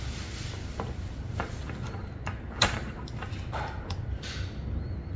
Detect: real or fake real